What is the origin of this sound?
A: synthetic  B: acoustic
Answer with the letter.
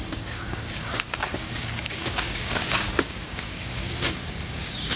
A